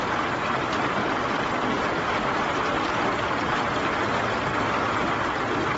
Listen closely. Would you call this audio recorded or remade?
recorded